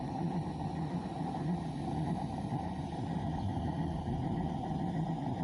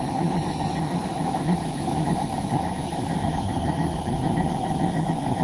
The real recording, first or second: first